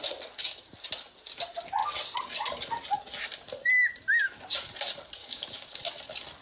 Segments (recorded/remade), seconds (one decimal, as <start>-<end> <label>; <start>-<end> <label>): 0.0-5.2 recorded; 5.2-6.0 remade; 6.0-6.4 recorded